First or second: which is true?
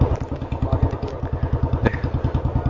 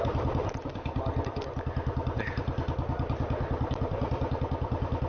first